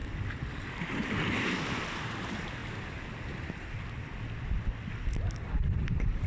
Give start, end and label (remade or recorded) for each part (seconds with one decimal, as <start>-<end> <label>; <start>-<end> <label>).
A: 0.0-1.3 recorded; 1.3-6.3 remade